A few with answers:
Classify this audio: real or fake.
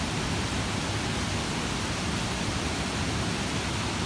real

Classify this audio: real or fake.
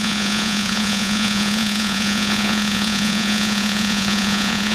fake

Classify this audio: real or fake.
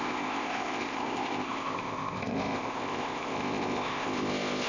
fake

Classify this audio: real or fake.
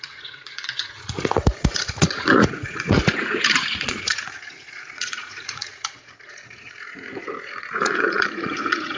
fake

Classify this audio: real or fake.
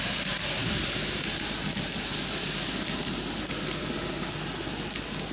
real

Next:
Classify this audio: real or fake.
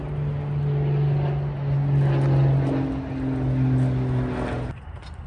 real